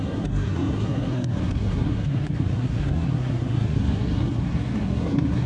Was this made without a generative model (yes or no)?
no